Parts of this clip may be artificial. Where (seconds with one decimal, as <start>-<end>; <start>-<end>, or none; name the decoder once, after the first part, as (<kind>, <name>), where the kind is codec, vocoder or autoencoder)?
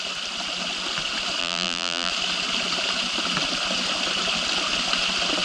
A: 1.4-2.1 (vocoder, BigVGAN v2)